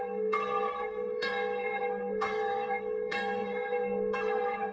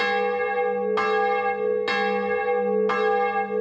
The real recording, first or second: second